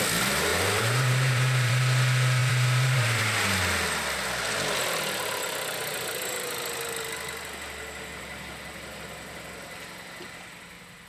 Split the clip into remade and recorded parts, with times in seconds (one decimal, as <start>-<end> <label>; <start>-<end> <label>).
0.0-0.5 recorded; 0.5-1.8 remade; 1.8-2.4 recorded; 2.4-3.6 remade; 3.6-11.1 recorded

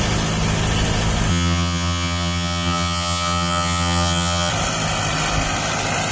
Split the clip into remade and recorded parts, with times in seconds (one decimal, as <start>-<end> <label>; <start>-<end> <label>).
0.0-1.3 recorded; 1.3-4.5 remade; 4.5-6.1 recorded

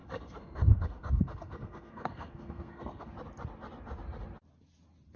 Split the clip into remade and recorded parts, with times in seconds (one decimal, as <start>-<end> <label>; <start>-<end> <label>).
0.0-3.1 remade; 3.1-5.2 recorded

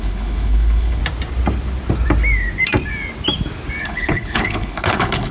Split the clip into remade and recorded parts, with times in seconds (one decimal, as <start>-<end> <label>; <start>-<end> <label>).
0.0-1.0 remade; 1.0-3.8 recorded; 3.8-5.3 remade

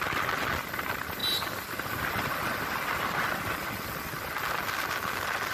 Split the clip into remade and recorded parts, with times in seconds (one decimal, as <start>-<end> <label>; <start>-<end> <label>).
0.0-5.5 recorded